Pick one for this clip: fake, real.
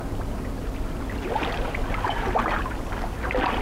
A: real